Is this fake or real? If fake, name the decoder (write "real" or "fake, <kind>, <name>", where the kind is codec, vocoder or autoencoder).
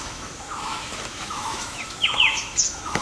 fake, autoencoder, DAC-VAE